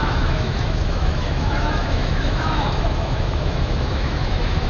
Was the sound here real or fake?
fake